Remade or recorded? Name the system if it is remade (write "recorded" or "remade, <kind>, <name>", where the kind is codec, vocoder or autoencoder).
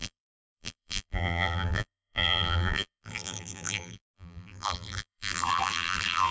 remade, vocoder, BigVGAN v2